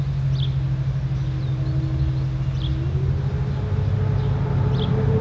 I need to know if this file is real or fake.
real